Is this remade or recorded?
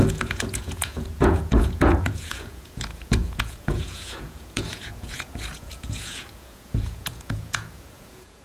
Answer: remade